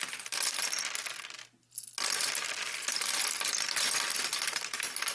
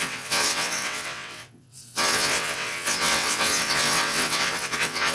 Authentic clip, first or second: first